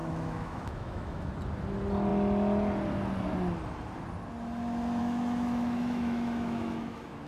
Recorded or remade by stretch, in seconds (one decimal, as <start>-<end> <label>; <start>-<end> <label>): 0.0-1.3 remade; 1.3-5.0 recorded; 5.0-7.3 remade